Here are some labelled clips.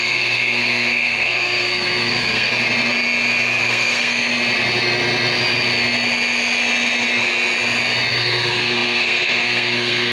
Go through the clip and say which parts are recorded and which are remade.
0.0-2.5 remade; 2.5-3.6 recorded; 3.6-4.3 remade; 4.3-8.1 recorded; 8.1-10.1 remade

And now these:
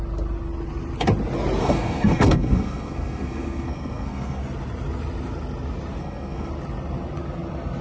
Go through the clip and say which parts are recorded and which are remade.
0.0-1.6 recorded; 1.6-4.4 remade; 4.4-6.0 recorded; 6.0-6.5 remade; 6.5-7.8 recorded

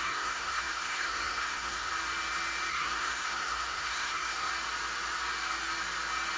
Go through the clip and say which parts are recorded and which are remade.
0.0-1.9 remade; 1.9-2.7 recorded; 2.7-4.5 remade; 4.5-6.4 recorded

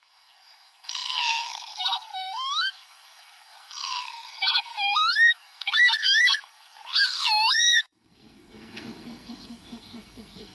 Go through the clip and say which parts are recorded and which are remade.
0.0-10.5 remade

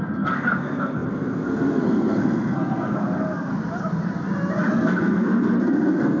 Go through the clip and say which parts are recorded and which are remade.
0.0-3.5 remade; 3.5-4.7 recorded; 4.7-6.2 remade